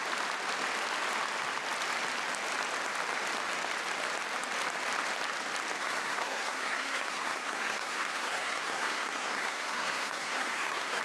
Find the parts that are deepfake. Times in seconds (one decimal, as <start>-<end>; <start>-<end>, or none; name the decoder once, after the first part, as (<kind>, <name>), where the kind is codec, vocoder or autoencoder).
5.8-11.0 (codec, SNAC)